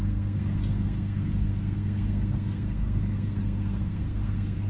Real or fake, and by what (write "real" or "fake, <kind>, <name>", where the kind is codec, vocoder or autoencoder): fake, codec, SNAC